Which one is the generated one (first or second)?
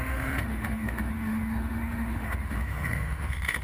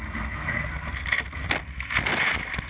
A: first